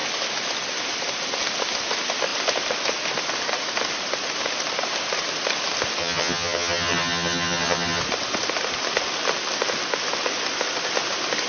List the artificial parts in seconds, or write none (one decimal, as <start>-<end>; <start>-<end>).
6.0-8.0